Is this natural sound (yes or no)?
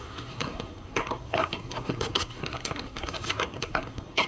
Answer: no